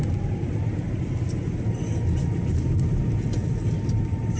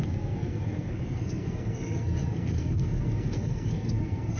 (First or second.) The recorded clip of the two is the first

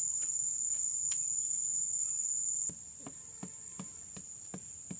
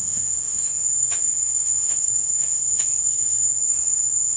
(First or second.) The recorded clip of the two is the first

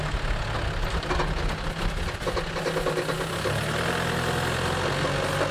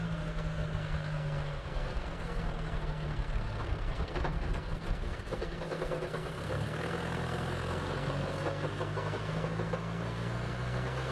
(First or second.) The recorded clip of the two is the first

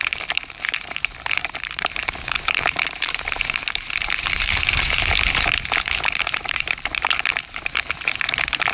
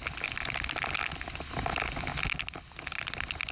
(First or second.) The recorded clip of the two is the second